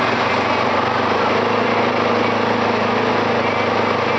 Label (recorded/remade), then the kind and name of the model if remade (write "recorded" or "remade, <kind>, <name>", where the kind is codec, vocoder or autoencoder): recorded